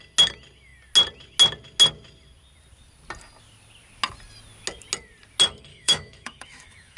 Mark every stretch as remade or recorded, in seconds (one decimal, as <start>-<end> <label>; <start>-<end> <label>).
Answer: 0.0-5.7 recorded; 5.7-7.0 remade